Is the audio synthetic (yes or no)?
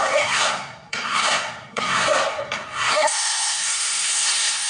yes